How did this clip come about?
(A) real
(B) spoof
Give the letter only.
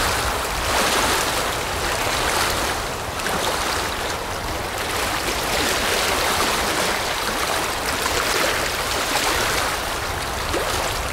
A